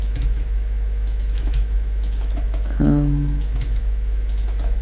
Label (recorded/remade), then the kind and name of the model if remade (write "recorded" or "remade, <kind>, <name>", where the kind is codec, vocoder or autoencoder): remade, autoencoder, DAC-VAE